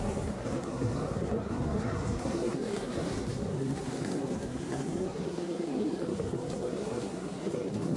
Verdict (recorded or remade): remade